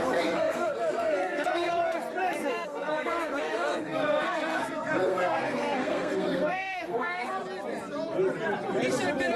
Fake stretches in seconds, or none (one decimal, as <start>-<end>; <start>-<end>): 0.0-1.8; 2.4-7.4

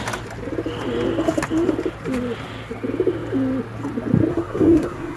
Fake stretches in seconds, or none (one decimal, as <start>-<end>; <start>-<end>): 4.3-5.2

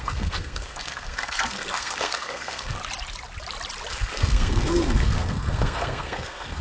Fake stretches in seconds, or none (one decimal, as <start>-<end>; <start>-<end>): 0.0-2.8; 3.9-6.6

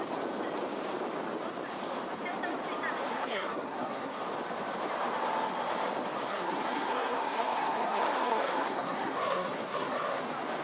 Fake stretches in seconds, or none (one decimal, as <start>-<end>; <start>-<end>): 3.1-4.2; 6.3-10.2

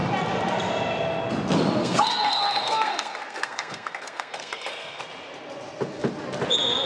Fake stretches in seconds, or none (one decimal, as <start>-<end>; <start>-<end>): 1.8-5.0

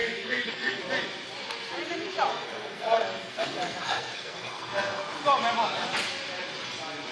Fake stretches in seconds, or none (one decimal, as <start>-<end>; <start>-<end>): 0.0-0.8; 2.3-5.0

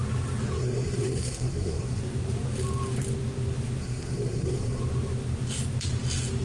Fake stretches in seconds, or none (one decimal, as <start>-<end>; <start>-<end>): 0.6-2.0; 3.8-4.8